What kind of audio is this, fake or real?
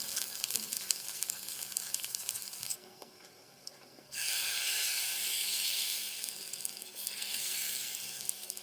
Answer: fake